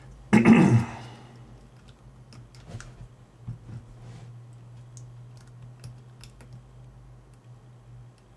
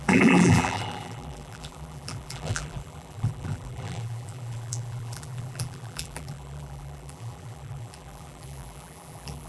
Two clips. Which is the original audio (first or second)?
first